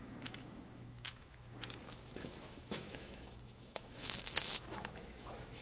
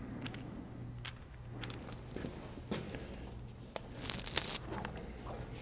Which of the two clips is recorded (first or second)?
second